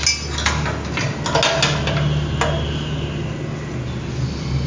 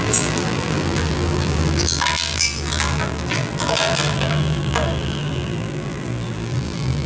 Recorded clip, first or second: first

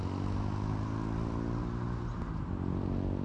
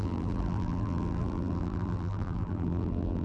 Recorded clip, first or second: first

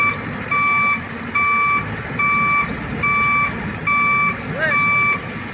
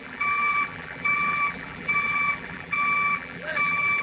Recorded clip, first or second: first